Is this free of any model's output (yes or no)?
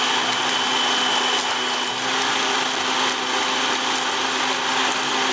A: yes